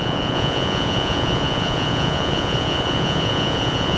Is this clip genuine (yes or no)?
no